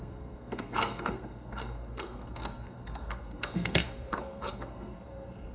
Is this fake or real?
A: fake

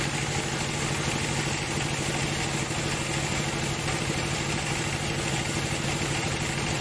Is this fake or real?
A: real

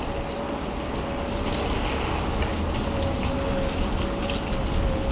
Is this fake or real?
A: real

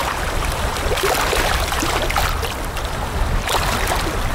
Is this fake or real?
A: real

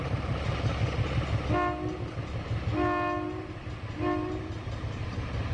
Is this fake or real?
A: real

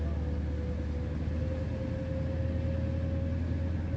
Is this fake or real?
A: real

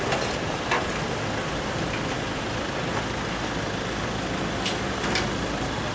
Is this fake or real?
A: real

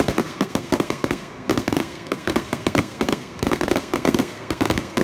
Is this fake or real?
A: fake